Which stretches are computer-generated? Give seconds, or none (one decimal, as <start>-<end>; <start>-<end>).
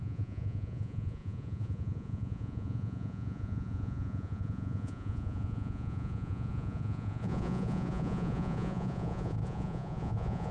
0.0-10.5